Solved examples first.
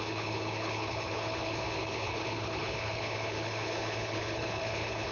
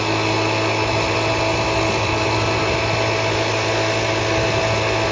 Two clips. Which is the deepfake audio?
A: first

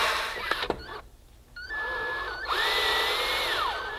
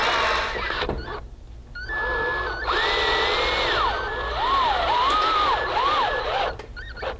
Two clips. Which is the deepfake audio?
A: first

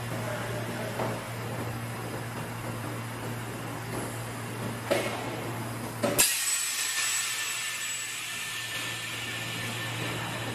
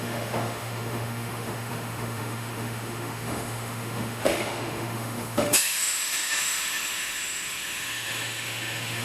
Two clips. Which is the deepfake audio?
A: second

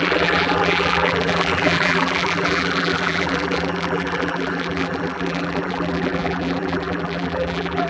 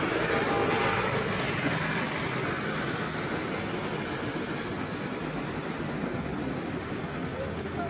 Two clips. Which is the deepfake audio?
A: first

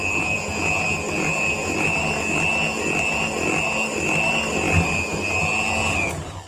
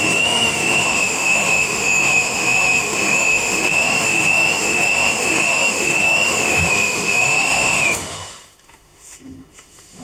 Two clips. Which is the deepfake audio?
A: second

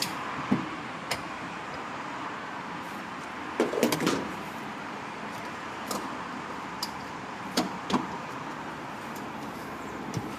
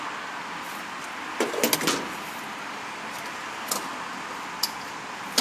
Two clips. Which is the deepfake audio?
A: first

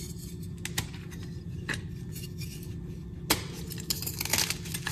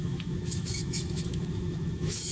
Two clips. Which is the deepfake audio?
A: second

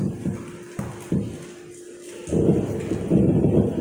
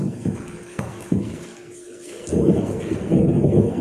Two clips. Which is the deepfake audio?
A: second